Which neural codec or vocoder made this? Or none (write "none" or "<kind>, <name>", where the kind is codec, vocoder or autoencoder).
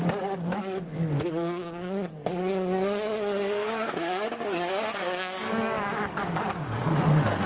codec, DAC